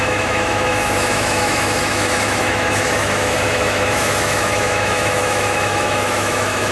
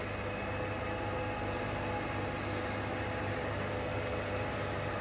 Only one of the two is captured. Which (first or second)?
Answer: second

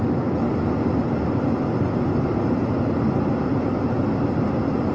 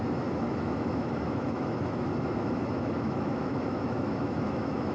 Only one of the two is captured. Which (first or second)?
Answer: first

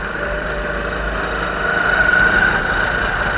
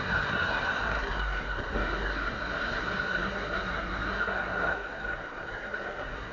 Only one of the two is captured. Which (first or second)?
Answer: first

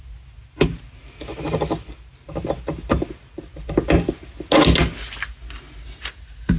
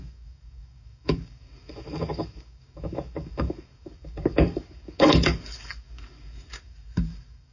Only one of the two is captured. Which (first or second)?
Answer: first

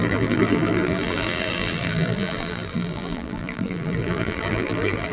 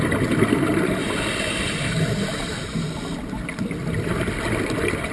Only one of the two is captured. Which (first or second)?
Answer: second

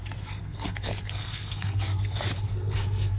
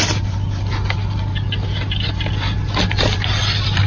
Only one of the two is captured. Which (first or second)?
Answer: second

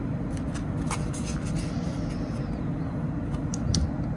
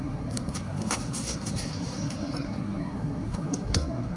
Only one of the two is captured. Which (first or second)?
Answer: first